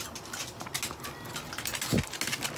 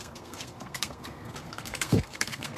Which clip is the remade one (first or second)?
second